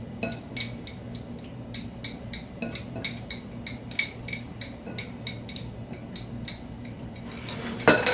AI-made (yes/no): no